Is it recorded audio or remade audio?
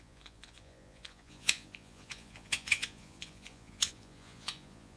remade